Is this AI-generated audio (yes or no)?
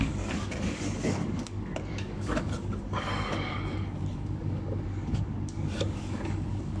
yes